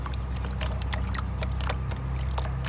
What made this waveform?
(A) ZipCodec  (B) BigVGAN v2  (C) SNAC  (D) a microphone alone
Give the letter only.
D